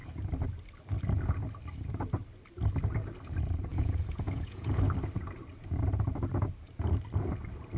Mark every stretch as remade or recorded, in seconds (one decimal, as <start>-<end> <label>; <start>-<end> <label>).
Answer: 0.0-3.7 recorded; 3.7-4.8 remade; 4.8-7.8 recorded